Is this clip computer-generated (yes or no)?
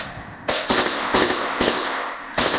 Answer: yes